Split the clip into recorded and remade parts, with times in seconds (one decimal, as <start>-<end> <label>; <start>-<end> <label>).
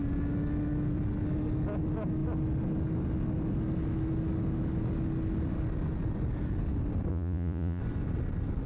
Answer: 0.0-7.1 recorded; 7.1-7.8 remade; 7.8-8.7 recorded